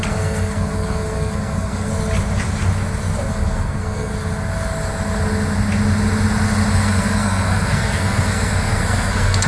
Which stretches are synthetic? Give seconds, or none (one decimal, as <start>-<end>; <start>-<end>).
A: 0.0-1.9; 3.3-4.1; 6.7-9.5